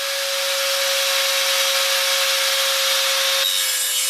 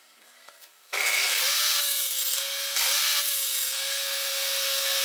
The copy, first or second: second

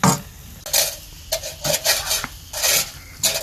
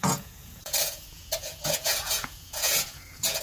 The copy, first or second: second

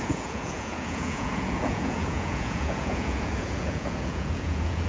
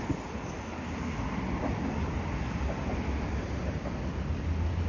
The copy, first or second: first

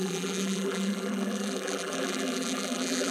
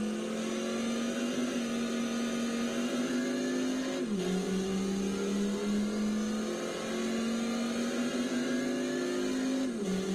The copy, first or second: first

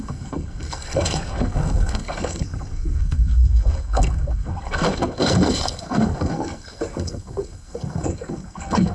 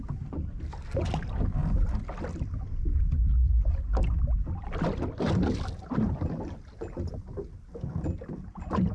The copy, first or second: first